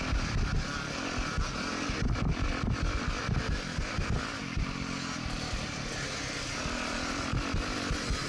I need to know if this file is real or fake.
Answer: real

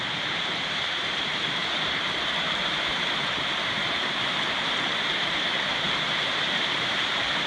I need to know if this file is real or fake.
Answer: fake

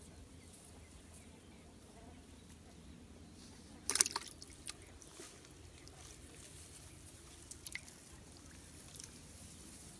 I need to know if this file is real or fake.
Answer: real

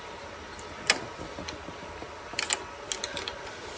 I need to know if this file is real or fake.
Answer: real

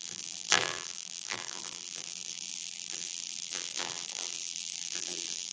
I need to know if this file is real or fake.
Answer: fake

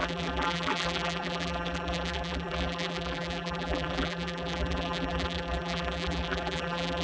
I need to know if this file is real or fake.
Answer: fake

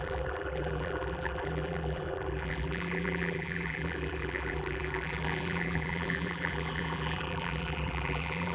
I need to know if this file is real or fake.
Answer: fake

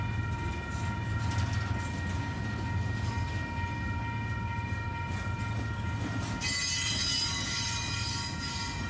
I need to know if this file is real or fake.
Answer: real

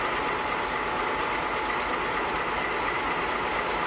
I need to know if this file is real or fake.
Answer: real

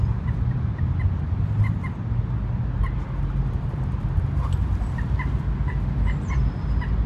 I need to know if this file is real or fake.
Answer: real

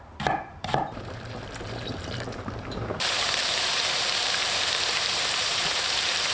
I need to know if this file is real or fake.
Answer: fake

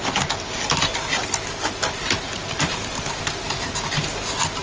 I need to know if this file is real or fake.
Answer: real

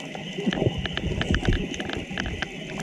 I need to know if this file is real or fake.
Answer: real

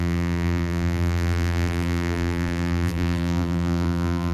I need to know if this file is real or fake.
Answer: fake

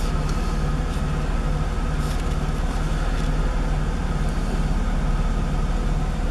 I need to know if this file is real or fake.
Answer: real